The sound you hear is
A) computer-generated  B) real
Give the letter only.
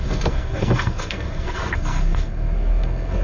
A